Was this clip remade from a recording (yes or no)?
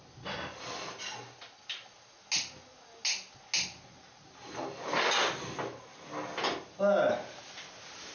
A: no